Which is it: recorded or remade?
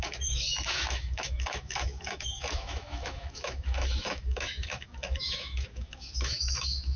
remade